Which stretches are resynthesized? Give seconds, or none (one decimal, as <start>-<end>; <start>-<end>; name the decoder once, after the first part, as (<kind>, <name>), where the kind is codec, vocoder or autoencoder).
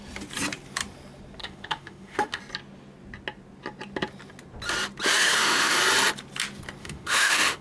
1.4-2.4 (autoencoder, DAC-VAE); 5.2-5.8; 6.8-7.6